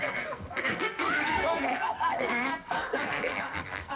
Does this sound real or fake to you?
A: fake